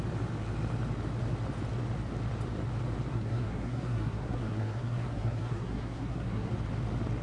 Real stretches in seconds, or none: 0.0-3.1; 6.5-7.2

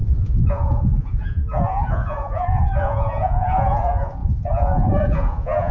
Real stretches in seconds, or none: none

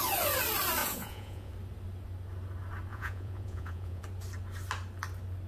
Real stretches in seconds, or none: 0.0-0.8; 1.5-2.9; 4.0-5.5

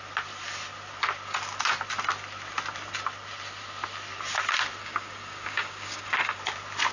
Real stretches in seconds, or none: 0.0-4.8; 6.4-6.9

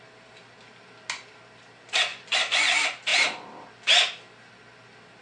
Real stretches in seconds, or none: 0.0-2.1; 2.7-5.2

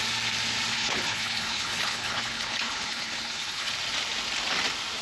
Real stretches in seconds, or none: 0.0-0.7; 3.7-5.0

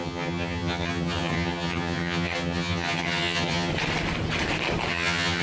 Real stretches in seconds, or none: 3.7-4.9